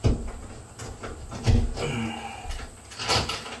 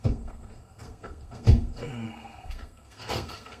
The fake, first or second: second